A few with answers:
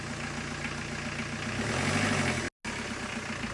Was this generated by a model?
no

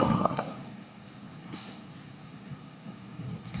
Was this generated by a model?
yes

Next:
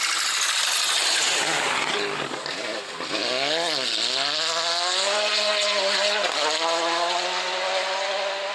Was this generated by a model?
no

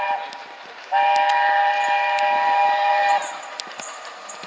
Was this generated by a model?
no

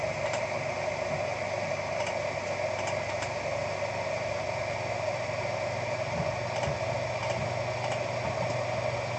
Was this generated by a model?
no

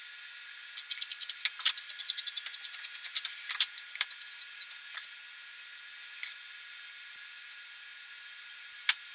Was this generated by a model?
no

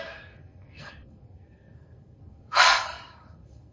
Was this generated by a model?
yes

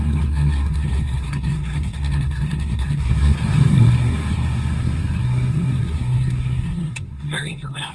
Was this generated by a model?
yes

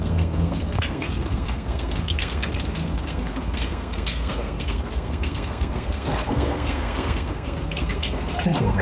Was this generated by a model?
yes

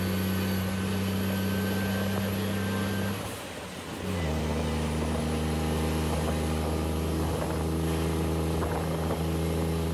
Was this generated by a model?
no